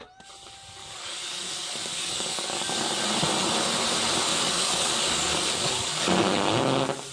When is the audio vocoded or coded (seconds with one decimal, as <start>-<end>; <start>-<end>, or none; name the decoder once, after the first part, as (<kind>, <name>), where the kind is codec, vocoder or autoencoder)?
0.8-3.0 (codec, DAC); 4.3-6.0